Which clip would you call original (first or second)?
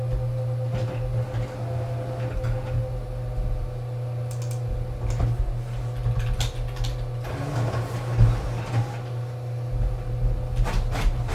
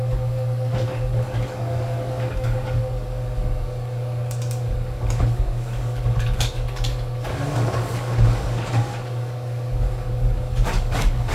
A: first